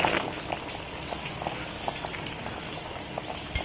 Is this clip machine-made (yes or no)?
no